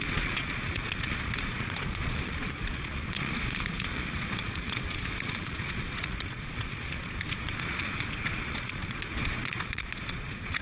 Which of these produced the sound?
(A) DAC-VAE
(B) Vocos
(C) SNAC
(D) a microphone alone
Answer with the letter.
B